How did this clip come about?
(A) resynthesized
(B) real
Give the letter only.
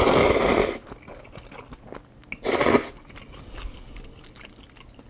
B